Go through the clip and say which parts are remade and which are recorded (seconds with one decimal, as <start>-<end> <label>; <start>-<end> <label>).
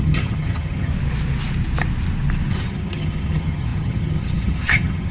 0.0-0.9 remade; 0.9-2.5 recorded; 2.5-5.1 remade